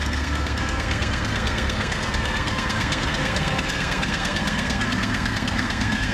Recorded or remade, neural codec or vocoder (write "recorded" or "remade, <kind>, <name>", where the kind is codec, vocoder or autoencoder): remade, codec, SNAC